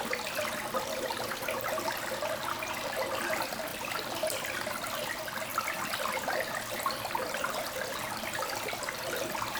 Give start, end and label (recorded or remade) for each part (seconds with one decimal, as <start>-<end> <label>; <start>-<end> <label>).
0.0-9.6 recorded

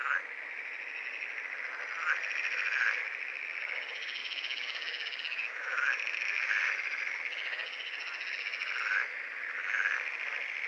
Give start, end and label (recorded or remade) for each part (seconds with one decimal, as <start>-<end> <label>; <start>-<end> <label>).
0.0-4.2 recorded; 4.2-6.5 remade; 6.5-10.7 recorded

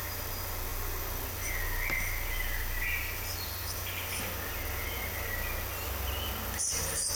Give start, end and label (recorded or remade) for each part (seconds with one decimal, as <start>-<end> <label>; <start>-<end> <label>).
0.0-7.1 recorded

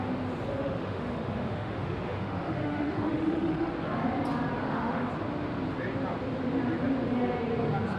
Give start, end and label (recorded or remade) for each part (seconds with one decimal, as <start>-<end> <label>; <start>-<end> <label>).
0.0-0.5 recorded; 0.5-3.7 remade; 3.7-4.6 recorded; 4.6-5.1 remade; 5.1-8.0 recorded

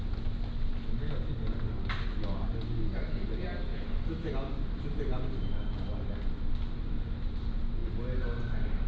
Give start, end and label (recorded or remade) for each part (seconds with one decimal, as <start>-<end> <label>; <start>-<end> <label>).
0.0-3.7 recorded; 3.7-4.3 remade; 4.3-8.9 recorded

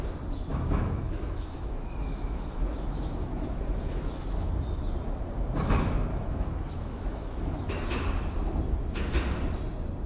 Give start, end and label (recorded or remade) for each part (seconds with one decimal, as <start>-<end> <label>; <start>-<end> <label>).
0.0-0.5 recorded; 0.5-4.5 remade; 4.5-6.1 recorded; 6.1-7.7 remade; 7.7-10.1 recorded